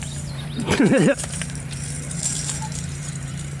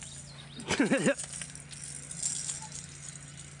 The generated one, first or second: first